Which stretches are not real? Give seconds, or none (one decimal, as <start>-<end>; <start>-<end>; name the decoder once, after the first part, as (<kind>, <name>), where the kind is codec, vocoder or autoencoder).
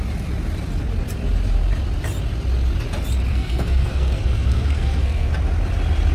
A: 3.3-5.3 (codec, SNAC)